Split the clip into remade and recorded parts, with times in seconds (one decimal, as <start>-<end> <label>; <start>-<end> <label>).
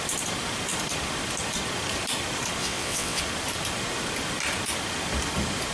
0.0-2.6 recorded; 2.6-3.2 remade; 3.2-5.7 recorded